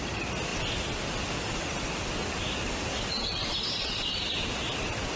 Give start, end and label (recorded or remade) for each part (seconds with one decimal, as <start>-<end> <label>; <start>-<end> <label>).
0.0-5.2 recorded